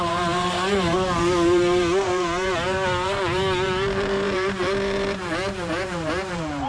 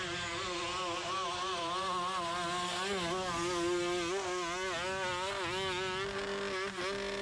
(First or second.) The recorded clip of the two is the second